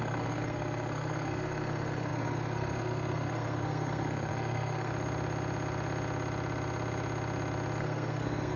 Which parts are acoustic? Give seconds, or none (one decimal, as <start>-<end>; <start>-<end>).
4.9-7.8

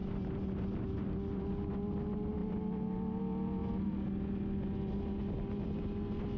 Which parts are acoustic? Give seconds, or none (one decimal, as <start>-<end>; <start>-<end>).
0.0-6.4

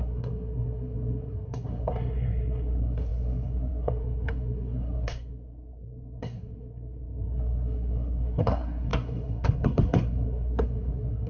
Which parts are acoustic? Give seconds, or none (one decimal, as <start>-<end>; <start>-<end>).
none

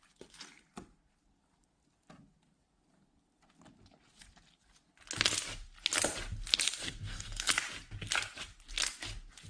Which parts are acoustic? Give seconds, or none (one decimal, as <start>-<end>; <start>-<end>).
0.0-6.8; 7.5-9.5

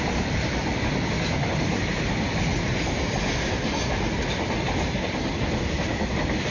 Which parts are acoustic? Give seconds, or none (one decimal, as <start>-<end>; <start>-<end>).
2.5-5.0

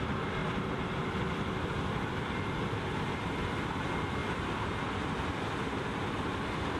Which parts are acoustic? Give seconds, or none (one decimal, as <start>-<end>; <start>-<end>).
0.0-0.4; 3.2-4.2; 5.2-6.8

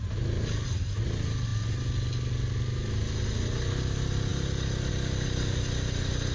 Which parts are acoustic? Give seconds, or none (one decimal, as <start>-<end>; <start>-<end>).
0.0-6.3

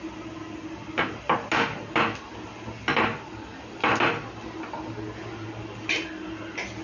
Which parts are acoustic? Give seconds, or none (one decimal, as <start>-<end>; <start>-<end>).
0.0-6.8